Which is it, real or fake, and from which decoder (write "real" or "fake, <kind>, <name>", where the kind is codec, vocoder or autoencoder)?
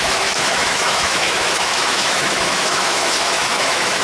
fake, autoencoder, DAC-VAE